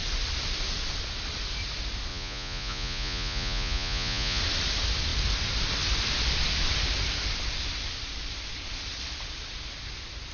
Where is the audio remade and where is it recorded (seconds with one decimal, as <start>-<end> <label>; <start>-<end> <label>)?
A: 0.0-2.1 recorded; 2.1-4.4 remade; 4.4-10.3 recorded